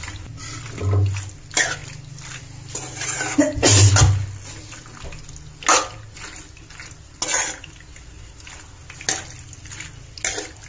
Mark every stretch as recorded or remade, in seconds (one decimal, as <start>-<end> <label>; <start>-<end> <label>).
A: 0.0-10.7 recorded